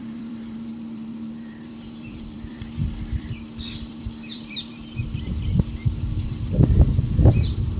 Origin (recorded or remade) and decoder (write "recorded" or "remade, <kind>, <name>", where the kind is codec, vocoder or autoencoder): remade, vocoder, BigVGAN v2